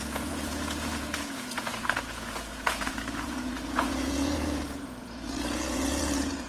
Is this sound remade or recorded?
remade